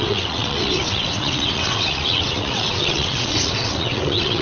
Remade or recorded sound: remade